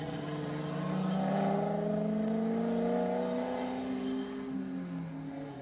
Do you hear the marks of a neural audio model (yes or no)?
no